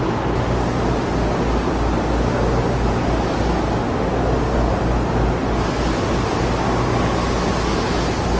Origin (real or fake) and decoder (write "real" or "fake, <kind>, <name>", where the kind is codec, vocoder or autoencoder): real